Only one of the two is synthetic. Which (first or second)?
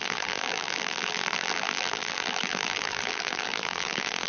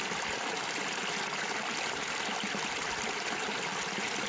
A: first